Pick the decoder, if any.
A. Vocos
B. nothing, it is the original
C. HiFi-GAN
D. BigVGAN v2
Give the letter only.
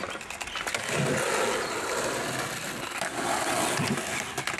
B